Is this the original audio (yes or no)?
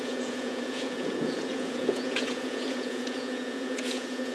no